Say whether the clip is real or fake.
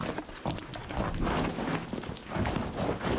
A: real